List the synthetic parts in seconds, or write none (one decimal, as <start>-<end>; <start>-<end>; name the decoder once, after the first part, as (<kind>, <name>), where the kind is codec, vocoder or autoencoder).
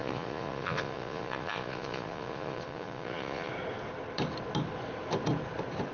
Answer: 0.0-3.5 (vocoder, Vocos)